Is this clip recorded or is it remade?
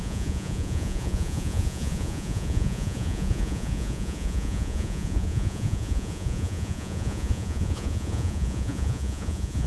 remade